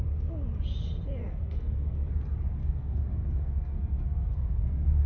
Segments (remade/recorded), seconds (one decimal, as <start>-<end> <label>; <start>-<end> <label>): 0.0-1.2 recorded; 1.2-2.1 remade; 2.1-2.6 recorded; 2.6-5.1 remade